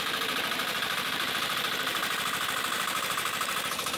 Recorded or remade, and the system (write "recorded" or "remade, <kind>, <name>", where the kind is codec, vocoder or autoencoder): remade, vocoder, BigVGAN v2